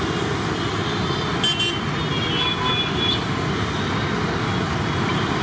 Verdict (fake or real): real